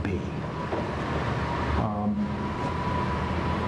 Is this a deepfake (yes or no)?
no